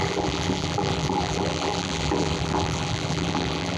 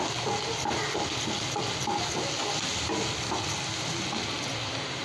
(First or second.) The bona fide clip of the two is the second